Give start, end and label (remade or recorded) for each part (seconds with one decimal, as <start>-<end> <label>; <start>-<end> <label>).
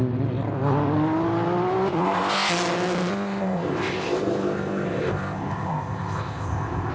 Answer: 0.0-2.0 recorded; 2.0-2.5 remade; 2.5-3.1 recorded; 3.1-6.9 remade